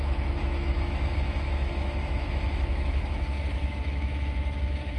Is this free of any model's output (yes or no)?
no